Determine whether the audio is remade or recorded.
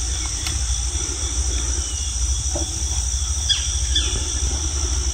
recorded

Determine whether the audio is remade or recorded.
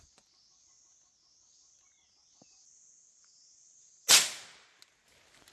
recorded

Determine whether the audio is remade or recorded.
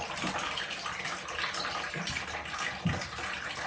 recorded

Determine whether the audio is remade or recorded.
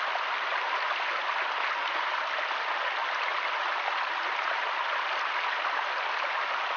recorded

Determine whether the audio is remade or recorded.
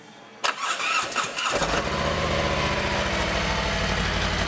recorded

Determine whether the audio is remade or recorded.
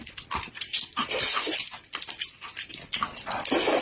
recorded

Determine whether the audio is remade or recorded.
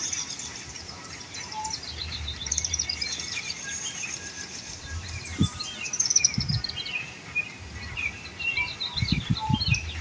remade